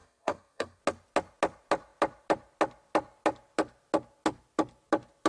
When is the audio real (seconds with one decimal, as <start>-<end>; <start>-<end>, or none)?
0.8-5.3